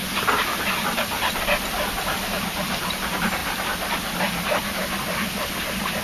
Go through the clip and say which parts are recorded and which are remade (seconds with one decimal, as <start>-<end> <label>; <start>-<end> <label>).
0.0-6.0 recorded